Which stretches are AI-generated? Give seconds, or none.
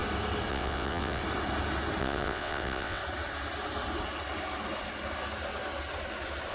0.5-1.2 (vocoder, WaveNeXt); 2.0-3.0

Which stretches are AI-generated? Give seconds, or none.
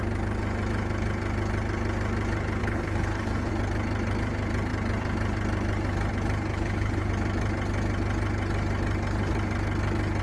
2.6-3.5 (codec, HILCodec); 6.5-7.1